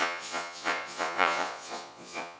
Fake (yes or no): yes